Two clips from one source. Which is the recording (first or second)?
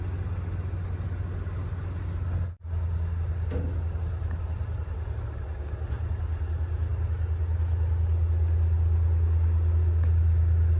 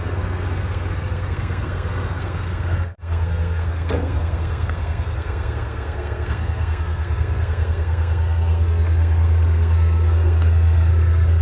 first